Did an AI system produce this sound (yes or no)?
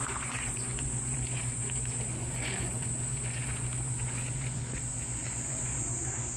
yes